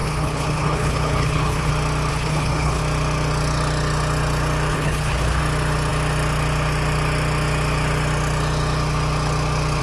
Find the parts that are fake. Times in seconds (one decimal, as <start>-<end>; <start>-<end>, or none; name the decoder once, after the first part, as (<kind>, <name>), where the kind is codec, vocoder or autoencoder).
0.0-1.7 (codec, HILCodec); 2.1-2.8; 4.7-5.4